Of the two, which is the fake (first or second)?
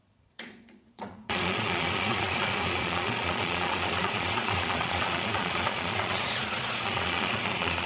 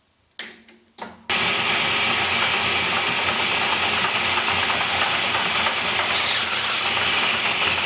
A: first